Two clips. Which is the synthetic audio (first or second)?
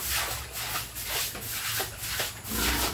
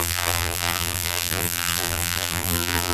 second